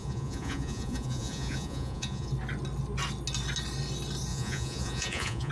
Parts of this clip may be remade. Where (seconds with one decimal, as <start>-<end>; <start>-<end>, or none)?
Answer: 0.0-2.3; 4.3-5.5